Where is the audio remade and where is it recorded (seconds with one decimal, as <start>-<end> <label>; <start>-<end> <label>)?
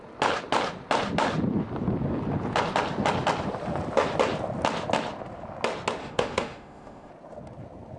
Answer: 0.0-6.0 recorded; 6.0-7.1 remade; 7.1-8.0 recorded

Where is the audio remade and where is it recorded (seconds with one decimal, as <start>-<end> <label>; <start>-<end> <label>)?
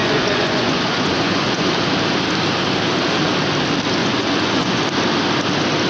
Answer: 0.0-1.7 remade; 1.7-4.0 recorded; 4.0-4.8 remade; 4.8-5.9 recorded